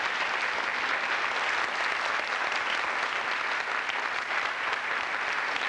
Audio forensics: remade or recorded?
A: recorded